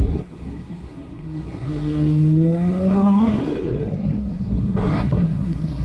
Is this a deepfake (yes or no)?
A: yes